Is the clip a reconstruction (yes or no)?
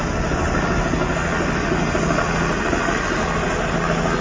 no